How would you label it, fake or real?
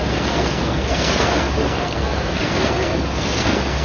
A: fake